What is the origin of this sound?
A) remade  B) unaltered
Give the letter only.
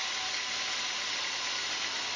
B